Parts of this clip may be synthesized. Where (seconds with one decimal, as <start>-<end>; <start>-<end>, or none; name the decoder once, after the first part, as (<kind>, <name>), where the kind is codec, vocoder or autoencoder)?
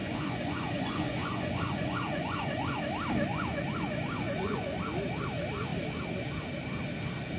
0.0-2.8 (vocoder, Vocos); 3.3-4.8